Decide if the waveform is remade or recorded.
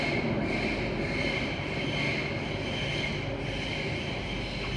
recorded